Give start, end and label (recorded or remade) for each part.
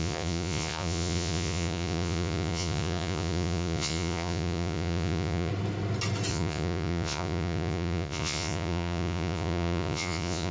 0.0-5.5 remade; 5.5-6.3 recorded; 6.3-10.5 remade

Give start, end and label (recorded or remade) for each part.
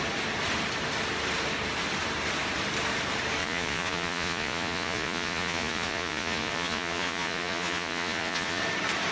0.0-3.4 recorded; 3.4-8.6 remade; 8.6-9.1 recorded